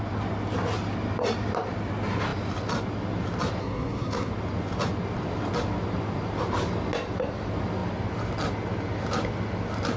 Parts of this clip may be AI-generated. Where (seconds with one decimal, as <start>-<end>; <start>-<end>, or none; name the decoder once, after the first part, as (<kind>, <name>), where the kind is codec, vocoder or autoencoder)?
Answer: 3.6-4.3 (codec, SNAC)